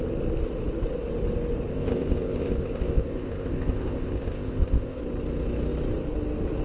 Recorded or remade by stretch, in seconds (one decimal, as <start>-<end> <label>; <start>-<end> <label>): 0.0-1.7 recorded; 1.7-5.0 remade; 5.0-6.6 recorded